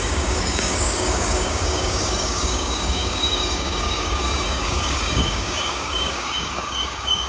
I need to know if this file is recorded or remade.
remade